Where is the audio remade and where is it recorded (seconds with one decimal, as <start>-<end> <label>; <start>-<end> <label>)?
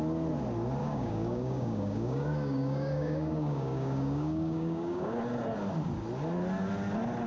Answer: 0.0-0.8 recorded; 0.8-5.2 remade; 5.2-7.3 recorded